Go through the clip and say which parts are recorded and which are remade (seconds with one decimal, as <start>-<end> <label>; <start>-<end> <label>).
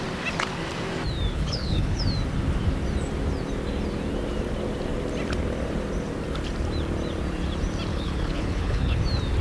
0.0-1.3 recorded; 1.3-2.0 remade; 2.0-7.9 recorded; 7.9-9.0 remade; 9.0-9.4 recorded